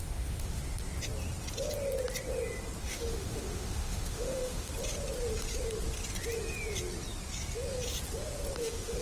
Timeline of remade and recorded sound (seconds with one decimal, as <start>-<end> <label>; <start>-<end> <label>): 0.0-0.6 remade; 0.6-2.8 recorded; 2.8-4.7 remade; 4.7-8.6 recorded; 8.6-9.0 remade